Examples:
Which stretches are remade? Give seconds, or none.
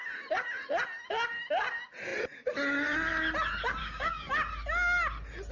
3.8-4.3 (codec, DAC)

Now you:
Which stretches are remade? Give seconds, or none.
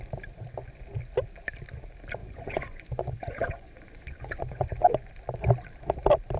2.2-5.1 (vocoder, Vocos)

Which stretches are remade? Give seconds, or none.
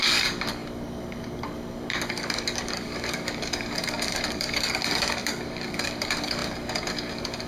0.0-7.5 (codec, DAC)